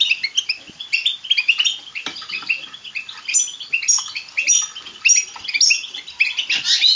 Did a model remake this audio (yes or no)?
no